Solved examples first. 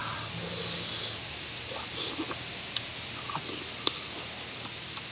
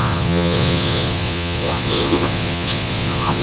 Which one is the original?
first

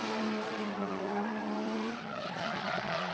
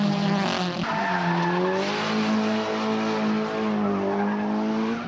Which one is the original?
second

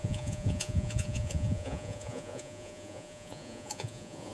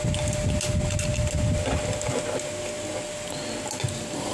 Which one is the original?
second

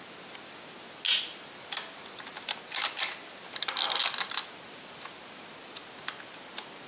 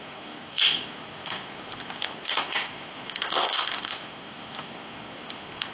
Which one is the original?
first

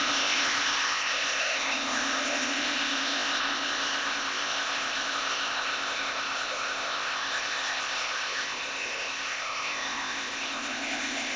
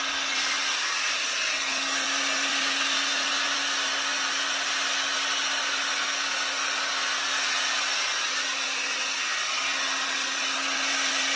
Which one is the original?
second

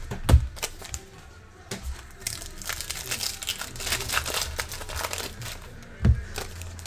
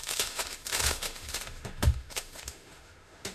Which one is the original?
first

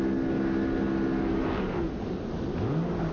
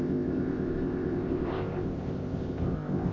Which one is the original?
first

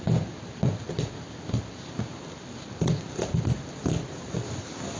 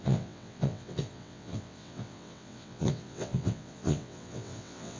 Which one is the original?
first